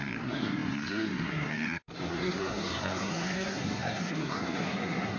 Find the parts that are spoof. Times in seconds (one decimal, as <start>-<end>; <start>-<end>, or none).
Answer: 0.0-5.2